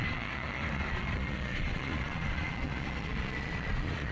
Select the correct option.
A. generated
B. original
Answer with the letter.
A